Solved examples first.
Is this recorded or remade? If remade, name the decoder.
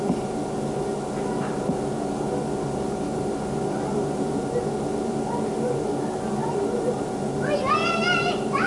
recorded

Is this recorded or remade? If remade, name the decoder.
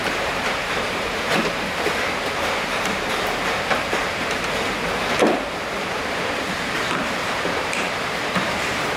remade, vocoder, BigVGAN v2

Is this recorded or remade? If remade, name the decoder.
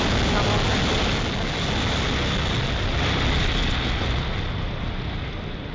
recorded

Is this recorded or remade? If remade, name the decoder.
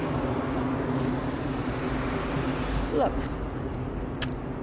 recorded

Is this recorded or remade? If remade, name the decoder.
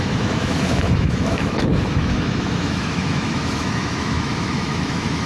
remade, autoencoder, DAC-VAE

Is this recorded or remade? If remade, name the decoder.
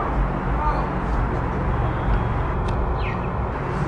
recorded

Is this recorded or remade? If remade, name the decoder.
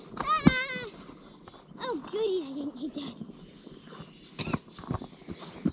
recorded